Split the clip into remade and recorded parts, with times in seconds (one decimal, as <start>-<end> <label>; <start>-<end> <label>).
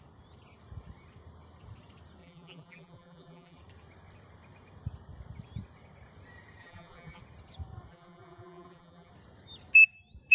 0.0-2.2 recorded; 2.2-3.6 remade; 3.6-6.6 recorded; 6.6-7.2 remade; 7.2-7.9 recorded; 7.9-9.1 remade; 9.1-10.3 recorded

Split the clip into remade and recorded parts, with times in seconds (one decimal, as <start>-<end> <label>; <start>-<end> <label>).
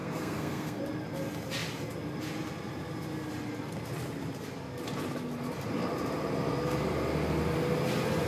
0.0-0.8 remade; 0.8-8.3 recorded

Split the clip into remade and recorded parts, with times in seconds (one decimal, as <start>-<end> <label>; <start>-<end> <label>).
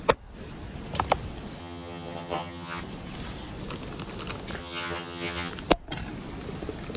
0.0-1.6 recorded; 1.6-2.8 remade; 2.8-4.6 recorded; 4.6-5.5 remade; 5.5-7.0 recorded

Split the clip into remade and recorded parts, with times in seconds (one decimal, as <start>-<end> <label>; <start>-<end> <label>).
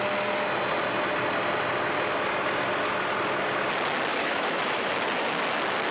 0.0-4.1 recorded; 4.1-4.9 remade; 4.9-5.9 recorded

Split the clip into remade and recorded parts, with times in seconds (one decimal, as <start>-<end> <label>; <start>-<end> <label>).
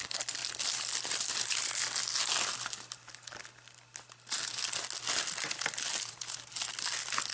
0.0-7.3 recorded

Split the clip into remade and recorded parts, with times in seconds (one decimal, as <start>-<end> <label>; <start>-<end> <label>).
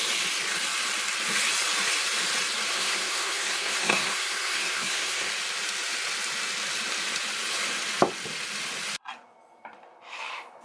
0.0-2.7 recorded; 2.7-5.3 remade; 5.3-10.6 recorded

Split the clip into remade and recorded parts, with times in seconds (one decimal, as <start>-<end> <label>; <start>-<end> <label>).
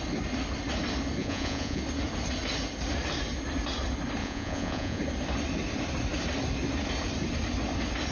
0.0-1.2 recorded; 1.2-1.8 remade; 1.8-4.2 recorded; 4.2-5.0 remade; 5.0-8.1 recorded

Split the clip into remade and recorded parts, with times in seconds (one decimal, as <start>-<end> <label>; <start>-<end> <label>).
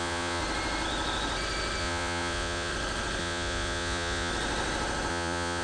0.0-0.4 remade; 0.4-1.8 recorded; 1.8-2.7 remade; 2.7-3.2 recorded; 3.2-4.3 remade; 4.3-5.1 recorded; 5.1-5.6 remade